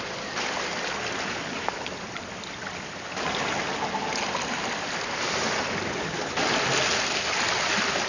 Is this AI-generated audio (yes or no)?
no